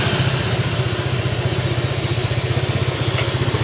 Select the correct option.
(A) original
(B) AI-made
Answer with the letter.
A